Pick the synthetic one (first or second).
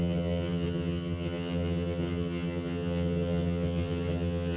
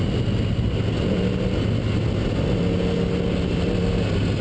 first